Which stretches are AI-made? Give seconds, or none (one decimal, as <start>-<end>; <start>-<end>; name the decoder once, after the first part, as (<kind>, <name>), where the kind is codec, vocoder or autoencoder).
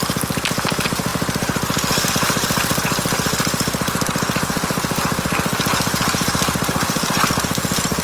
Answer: none